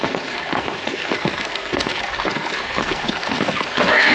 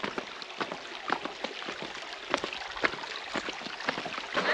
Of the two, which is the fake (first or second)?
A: first